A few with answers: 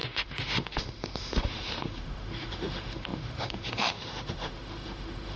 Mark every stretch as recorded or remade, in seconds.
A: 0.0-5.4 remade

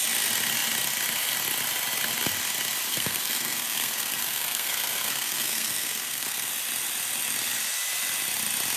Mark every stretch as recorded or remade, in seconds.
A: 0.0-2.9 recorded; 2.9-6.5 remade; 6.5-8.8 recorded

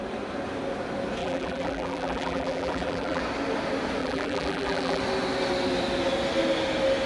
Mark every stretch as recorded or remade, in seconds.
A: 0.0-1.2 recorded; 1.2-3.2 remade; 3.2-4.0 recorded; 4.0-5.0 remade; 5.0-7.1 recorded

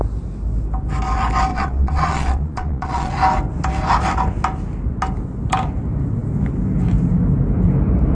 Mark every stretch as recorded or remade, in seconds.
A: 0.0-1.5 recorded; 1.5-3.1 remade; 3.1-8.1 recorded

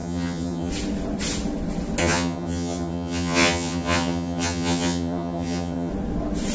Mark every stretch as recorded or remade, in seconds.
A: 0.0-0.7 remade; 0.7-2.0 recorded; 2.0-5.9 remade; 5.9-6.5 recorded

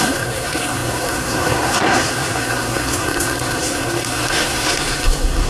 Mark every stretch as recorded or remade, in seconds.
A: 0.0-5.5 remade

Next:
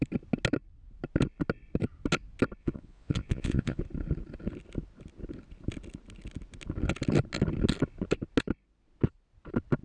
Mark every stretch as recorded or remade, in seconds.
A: 0.0-2.6 recorded; 2.6-3.8 remade; 3.8-9.8 recorded